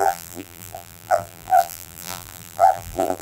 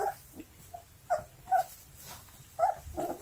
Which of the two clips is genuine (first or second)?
second